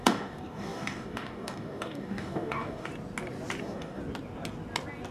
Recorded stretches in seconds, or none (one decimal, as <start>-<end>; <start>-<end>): 2.9-3.6; 4.0-5.1

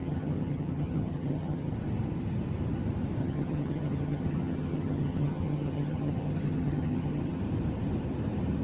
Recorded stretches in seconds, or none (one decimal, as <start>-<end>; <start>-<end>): 1.7-3.2; 7.4-8.6

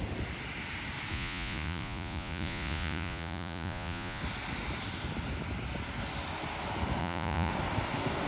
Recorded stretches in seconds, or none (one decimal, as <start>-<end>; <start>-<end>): 0.0-1.1; 4.2-7.0; 7.5-8.3

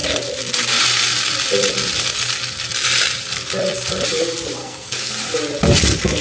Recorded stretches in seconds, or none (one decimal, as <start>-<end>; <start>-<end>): 0.0-4.6; 5.1-6.2